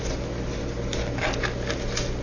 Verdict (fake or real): real